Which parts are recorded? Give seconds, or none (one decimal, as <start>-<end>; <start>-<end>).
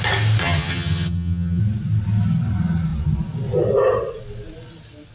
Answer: 0.0-0.4; 1.6-5.1